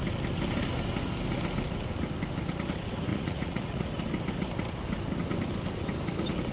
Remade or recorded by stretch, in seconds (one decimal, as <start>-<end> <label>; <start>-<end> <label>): 0.0-3.1 recorded; 3.1-3.9 remade; 3.9-6.5 recorded